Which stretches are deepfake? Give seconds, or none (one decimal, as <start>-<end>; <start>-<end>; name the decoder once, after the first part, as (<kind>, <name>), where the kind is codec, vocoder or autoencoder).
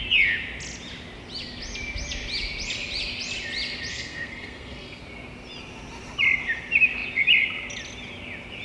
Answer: 3.9-5.0 (codec, SNAC)